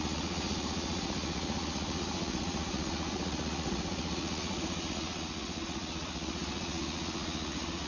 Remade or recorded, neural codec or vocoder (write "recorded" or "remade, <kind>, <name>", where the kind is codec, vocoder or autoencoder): remade, vocoder, Vocos